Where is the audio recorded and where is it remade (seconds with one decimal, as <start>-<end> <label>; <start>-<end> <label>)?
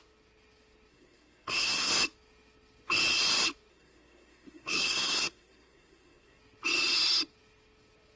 0.0-0.9 recorded; 0.9-1.9 remade; 1.9-3.7 recorded; 3.7-6.4 remade; 6.4-8.2 recorded